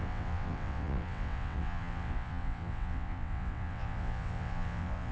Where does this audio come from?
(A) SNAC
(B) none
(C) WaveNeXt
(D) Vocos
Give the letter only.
C